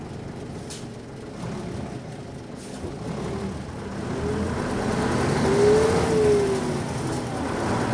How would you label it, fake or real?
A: real